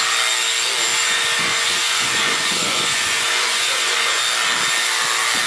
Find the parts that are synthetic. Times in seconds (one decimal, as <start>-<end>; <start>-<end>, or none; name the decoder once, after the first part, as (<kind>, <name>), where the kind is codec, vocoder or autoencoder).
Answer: 0.9-4.2 (vocoder, Vocos)